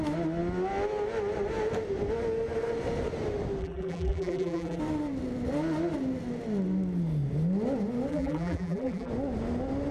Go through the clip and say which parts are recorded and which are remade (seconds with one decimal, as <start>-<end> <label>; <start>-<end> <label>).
0.0-3.6 recorded; 3.6-4.8 remade; 4.8-8.1 recorded; 8.1-9.1 remade; 9.1-9.9 recorded